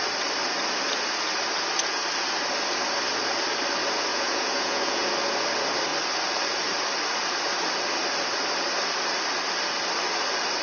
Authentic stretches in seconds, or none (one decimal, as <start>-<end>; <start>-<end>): 0.0-4.1; 5.1-10.6